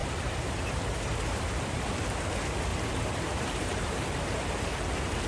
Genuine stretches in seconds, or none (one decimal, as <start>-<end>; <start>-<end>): 2.2-2.7; 4.0-5.3